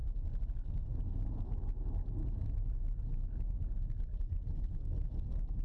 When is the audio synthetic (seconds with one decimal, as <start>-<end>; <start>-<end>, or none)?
none